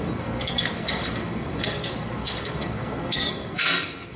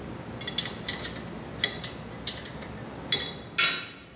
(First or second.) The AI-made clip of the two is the first